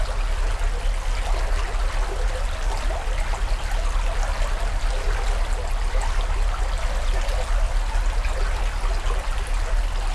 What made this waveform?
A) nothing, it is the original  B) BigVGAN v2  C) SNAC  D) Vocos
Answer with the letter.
A